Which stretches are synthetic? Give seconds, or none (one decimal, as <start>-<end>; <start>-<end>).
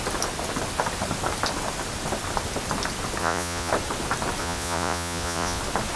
3.2-3.7; 4.4-5.6